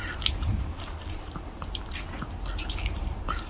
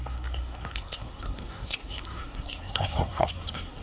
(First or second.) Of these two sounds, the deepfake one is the second